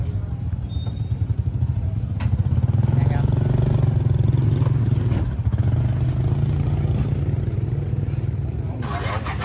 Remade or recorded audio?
recorded